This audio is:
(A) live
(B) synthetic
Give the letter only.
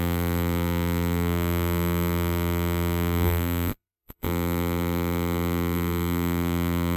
B